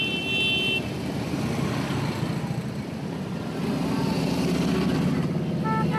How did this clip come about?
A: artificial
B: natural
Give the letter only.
B